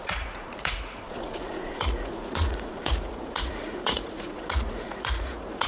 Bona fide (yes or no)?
no